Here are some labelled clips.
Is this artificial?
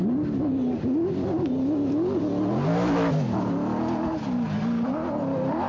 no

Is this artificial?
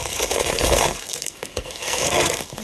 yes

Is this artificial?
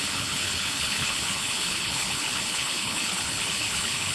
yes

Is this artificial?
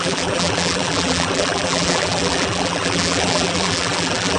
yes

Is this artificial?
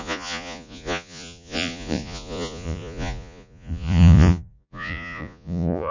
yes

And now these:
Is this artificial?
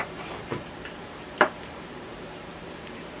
yes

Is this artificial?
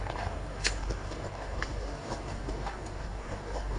yes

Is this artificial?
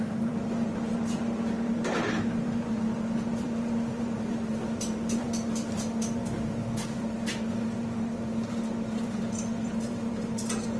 yes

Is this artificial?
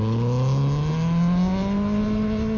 no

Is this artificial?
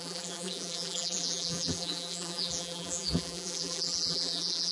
yes